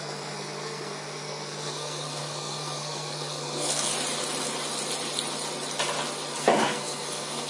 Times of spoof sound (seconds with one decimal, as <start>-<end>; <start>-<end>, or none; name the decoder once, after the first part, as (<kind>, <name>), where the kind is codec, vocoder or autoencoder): 0.0-3.9 (codec, SNAC); 6.4-7.5